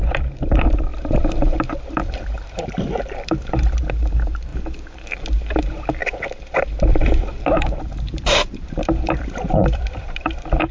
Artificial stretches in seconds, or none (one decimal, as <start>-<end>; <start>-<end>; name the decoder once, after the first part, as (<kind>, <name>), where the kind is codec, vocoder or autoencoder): 0.0-4.5 (vocoder, BigVGAN v2); 5.6-6.0; 6.9-10.7